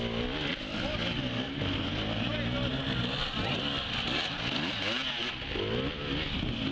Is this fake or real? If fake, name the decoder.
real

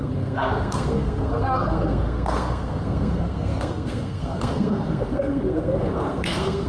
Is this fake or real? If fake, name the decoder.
fake, codec, SNAC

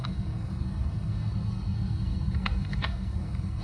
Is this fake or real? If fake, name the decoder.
fake, codec, SNAC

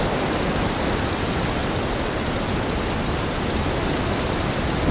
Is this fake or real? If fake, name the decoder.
real